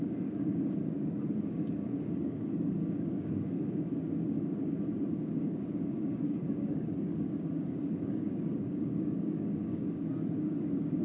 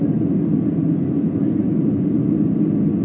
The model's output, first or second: first